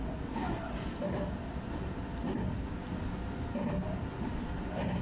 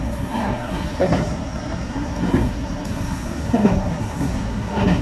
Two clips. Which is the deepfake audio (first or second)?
second